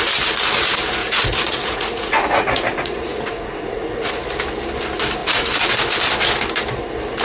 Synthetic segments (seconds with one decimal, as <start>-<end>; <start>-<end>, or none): 1.0-4.1; 5.2-5.7